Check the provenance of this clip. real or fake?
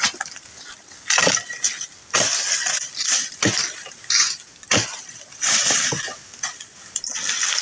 real